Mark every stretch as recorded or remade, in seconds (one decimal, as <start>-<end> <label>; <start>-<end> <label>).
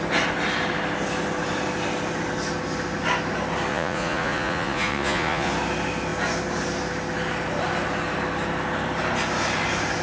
0.0-3.7 recorded; 3.7-5.5 remade; 5.5-10.0 recorded